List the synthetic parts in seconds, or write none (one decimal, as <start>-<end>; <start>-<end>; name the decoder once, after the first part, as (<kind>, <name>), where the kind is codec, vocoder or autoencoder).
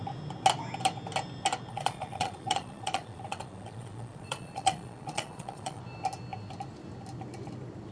1.7-5.8 (vocoder, Vocos)